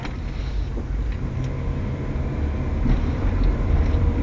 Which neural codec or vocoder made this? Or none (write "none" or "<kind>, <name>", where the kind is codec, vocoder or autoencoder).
none